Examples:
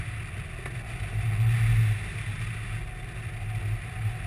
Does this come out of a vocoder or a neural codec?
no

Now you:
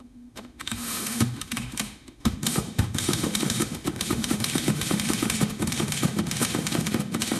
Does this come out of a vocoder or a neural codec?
yes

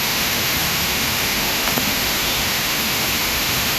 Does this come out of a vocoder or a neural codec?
yes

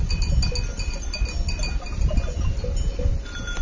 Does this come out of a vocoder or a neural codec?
no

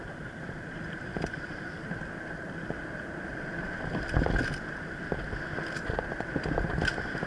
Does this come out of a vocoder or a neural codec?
no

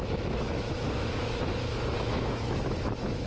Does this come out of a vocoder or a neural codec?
yes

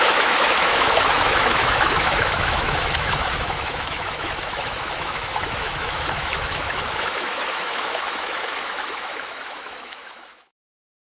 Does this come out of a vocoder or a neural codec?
yes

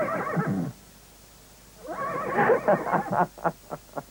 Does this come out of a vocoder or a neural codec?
no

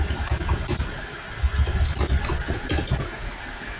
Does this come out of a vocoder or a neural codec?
no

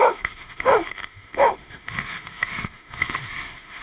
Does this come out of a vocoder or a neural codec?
yes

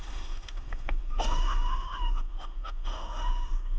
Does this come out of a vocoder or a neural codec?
yes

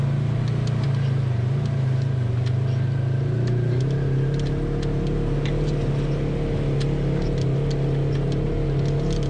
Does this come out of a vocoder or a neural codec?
no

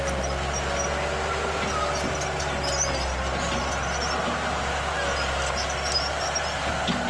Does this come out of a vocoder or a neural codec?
no